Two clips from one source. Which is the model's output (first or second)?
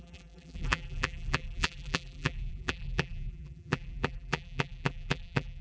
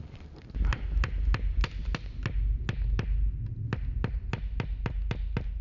first